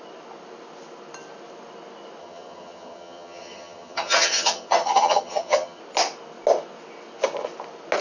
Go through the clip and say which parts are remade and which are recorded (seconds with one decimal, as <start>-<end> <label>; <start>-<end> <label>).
0.0-2.2 recorded; 2.2-5.8 remade; 5.8-8.0 recorded